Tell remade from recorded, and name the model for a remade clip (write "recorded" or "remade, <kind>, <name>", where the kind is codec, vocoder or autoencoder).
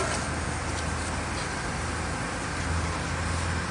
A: recorded